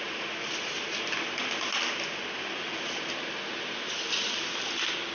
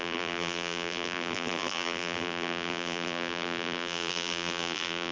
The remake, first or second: second